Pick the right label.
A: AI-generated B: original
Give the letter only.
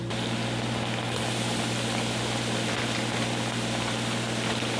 B